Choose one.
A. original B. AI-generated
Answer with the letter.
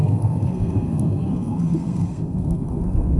B